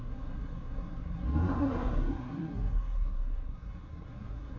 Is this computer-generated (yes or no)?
yes